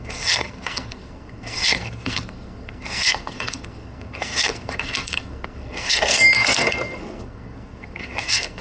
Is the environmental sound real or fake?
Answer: fake